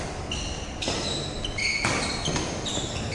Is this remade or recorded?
recorded